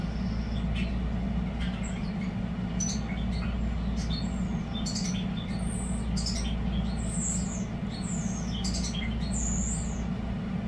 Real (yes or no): yes